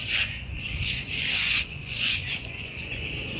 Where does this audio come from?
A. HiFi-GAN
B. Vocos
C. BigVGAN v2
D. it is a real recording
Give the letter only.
B